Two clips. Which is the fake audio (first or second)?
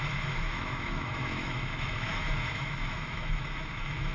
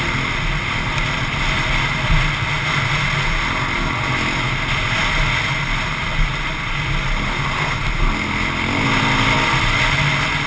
first